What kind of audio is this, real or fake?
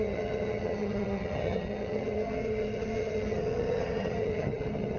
fake